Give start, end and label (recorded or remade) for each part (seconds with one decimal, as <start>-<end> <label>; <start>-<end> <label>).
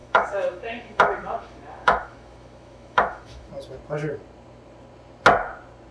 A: 0.0-3.5 remade; 3.5-5.9 recorded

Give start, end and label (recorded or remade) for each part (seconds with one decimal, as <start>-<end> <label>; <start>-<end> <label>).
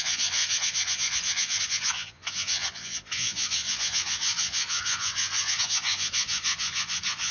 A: 0.0-7.3 remade